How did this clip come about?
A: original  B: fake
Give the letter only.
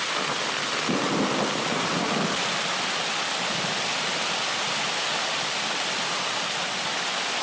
A